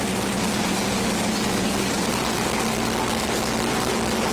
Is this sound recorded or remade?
recorded